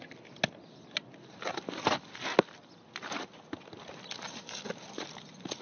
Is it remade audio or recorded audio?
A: recorded